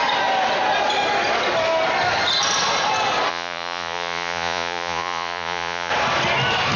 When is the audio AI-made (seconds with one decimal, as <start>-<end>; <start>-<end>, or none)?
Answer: 3.3-5.9